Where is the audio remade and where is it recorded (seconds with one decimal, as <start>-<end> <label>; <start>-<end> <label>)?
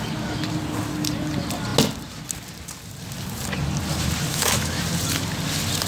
0.0-4.3 recorded; 4.3-4.8 remade; 4.8-5.9 recorded